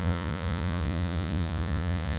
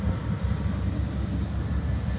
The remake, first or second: first